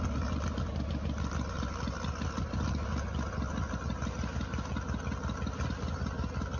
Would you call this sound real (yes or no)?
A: yes